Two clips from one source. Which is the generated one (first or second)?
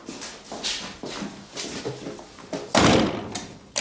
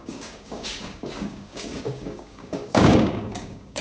second